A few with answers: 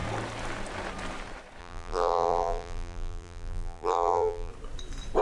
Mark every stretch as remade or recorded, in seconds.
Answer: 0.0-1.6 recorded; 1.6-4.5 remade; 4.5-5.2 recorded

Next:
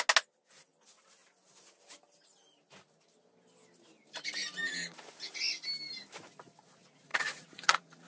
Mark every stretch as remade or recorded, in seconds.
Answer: 0.0-7.1 recorded; 7.1-8.1 remade

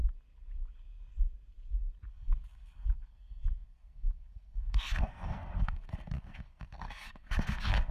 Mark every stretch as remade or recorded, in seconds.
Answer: 0.0-2.1 recorded; 2.1-7.9 remade